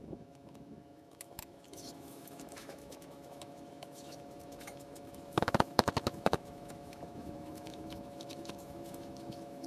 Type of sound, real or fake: fake